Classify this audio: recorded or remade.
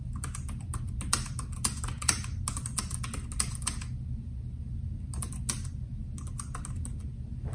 recorded